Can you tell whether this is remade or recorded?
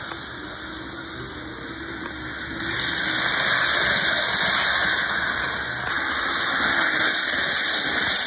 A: recorded